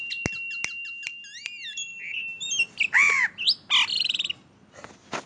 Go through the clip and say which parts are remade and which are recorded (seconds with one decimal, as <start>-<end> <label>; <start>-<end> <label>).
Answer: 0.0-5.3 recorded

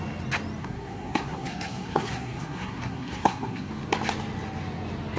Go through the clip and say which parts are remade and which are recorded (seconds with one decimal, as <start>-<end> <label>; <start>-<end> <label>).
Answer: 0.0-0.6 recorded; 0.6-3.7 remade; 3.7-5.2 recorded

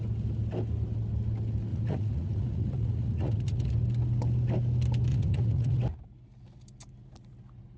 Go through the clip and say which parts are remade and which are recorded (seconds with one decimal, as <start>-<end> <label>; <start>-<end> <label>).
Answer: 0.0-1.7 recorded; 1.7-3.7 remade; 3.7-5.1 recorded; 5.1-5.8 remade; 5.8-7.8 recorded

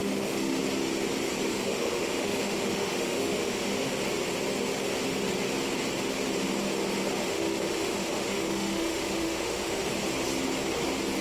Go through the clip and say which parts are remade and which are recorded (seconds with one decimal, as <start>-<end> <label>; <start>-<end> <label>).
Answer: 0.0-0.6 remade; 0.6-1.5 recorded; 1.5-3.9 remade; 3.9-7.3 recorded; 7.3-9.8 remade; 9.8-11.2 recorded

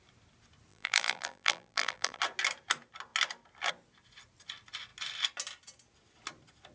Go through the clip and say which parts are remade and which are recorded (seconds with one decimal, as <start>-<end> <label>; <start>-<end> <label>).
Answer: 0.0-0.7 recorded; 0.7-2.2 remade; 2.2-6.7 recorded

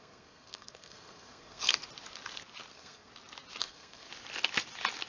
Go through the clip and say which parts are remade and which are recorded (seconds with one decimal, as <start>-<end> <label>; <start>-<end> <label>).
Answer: 0.0-1.8 remade; 1.8-2.7 recorded; 2.7-3.1 remade; 3.1-3.6 recorded; 3.6-4.1 remade; 4.1-5.1 recorded

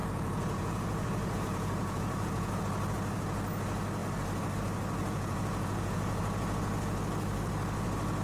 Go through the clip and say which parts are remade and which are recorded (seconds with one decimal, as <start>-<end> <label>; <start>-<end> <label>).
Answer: 0.0-2.6 remade; 2.6-5.0 recorded; 5.0-6.2 remade; 6.2-8.2 recorded

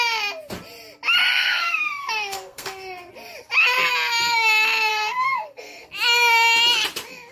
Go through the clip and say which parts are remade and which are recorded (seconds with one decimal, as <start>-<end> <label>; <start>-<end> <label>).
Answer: 0.0-1.3 recorded; 1.3-3.1 remade; 3.1-4.9 recorded; 4.9-5.9 remade; 5.9-7.3 recorded